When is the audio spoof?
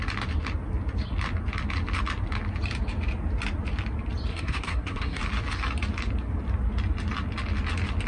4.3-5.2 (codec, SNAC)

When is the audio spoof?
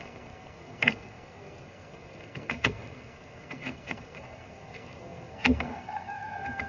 0.0-6.7 (codec, SNAC)